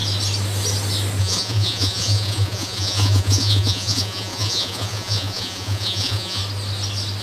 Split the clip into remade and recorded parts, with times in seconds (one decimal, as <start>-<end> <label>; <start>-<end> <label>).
0.0-1.2 recorded; 1.2-6.4 remade; 6.4-7.2 recorded